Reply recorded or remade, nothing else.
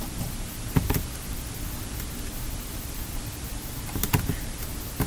remade